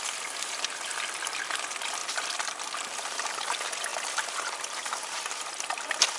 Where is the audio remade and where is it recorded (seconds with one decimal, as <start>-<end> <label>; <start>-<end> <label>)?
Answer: 0.0-2.0 recorded; 2.0-2.9 remade; 2.9-3.9 recorded; 3.9-5.5 remade; 5.5-6.2 recorded

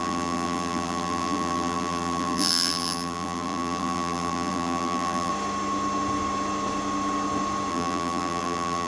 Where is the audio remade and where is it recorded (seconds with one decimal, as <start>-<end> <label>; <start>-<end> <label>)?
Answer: 0.0-5.3 remade; 5.3-7.7 recorded; 7.7-8.9 remade

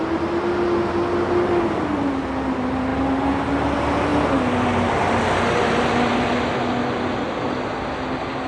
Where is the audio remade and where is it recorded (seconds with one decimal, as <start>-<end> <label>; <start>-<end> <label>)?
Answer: 0.0-8.5 recorded

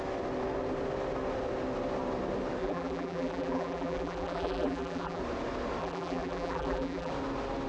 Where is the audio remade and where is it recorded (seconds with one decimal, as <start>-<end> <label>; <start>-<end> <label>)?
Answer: 0.0-2.6 recorded; 2.6-5.2 remade; 5.2-5.8 recorded; 5.8-7.1 remade; 7.1-7.7 recorded